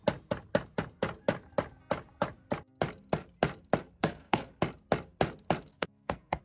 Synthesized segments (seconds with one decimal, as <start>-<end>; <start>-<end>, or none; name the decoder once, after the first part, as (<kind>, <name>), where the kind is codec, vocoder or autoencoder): 4.0-4.5 (codec, SNAC); 5.7-6.4